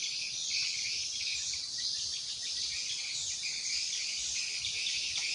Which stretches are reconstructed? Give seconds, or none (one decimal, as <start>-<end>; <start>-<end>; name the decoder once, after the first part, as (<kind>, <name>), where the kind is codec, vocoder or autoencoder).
none